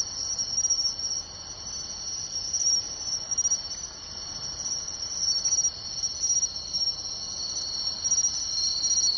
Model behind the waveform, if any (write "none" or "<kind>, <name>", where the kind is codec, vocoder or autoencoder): none